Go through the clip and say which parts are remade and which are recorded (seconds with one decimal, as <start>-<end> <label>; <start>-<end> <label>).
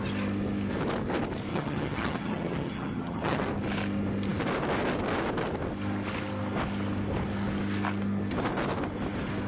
0.0-1.5 recorded; 1.5-3.4 remade; 3.4-9.5 recorded